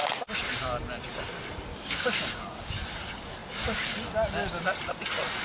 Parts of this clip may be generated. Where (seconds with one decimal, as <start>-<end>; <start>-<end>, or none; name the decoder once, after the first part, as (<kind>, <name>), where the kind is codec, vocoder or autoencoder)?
1.7-2.7 (codec, DAC)